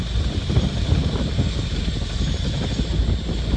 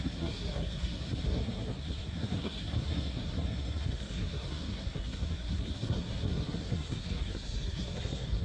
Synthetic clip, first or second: second